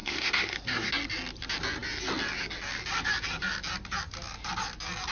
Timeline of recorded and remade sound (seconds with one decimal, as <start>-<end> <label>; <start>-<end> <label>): 0.0-0.9 remade; 0.9-5.1 recorded

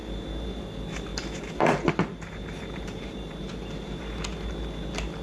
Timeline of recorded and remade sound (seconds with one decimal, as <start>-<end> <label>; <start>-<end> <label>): 0.0-0.6 remade; 0.6-1.1 recorded; 1.1-4.0 remade; 4.0-5.2 recorded

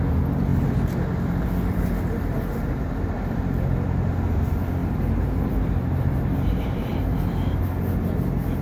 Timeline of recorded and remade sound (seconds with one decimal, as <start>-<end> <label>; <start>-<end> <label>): 0.0-4.8 recorded; 4.8-7.6 remade; 7.6-8.6 recorded

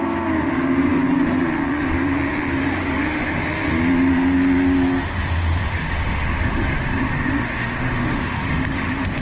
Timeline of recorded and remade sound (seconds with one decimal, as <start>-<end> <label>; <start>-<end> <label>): 0.0-2.8 recorded; 2.8-3.4 remade; 3.4-5.6 recorded; 5.6-9.2 remade